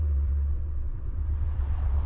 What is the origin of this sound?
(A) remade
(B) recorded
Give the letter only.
A